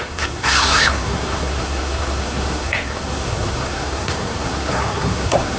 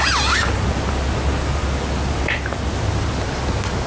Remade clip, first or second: first